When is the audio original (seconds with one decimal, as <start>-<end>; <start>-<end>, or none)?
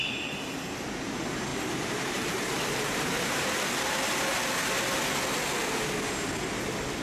0.0-1.5; 4.2-7.0